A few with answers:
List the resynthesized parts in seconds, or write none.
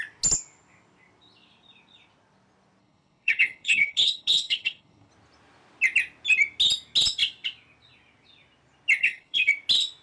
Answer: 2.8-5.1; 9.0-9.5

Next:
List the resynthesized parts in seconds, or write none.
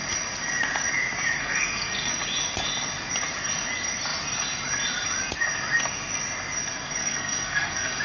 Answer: 1.4-2.1; 7.0-8.0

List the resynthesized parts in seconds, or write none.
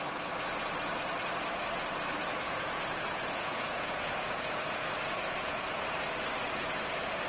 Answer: 2.2-5.8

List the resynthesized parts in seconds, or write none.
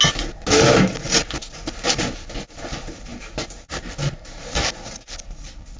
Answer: none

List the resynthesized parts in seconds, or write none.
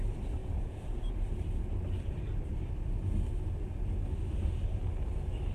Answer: 0.4-1.0